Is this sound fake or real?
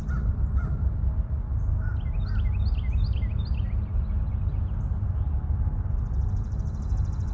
real